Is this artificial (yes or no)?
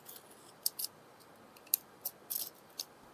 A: no